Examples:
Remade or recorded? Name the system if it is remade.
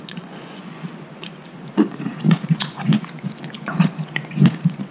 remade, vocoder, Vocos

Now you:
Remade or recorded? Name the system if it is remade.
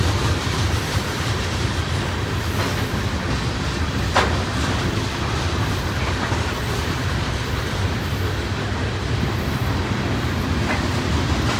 recorded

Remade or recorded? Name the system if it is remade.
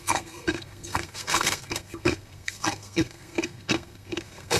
remade, codec, SNAC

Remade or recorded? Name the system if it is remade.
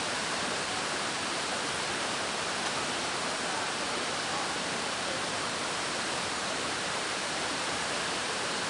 remade, vocoder, BigVGAN v2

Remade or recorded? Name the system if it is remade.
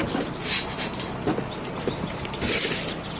recorded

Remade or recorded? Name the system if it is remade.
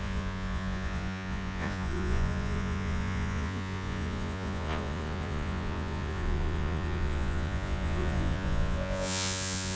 remade, vocoder, Vocos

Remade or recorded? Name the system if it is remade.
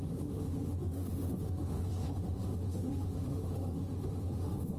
remade, autoencoder, DAC-VAE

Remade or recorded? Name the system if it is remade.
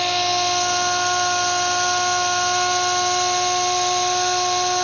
recorded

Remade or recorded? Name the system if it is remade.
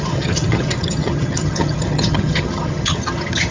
remade, vocoder, HiFi-GAN